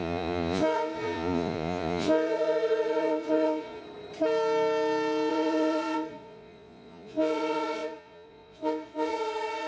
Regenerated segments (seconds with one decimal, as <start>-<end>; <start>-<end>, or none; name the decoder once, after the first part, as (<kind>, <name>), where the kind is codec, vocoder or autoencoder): 0.0-3.8 (vocoder, Vocos); 5.3-9.7